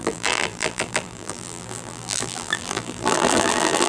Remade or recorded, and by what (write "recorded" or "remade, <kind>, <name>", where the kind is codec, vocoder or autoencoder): remade, vocoder, BigVGAN v2